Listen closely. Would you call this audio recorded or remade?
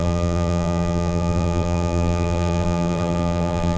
remade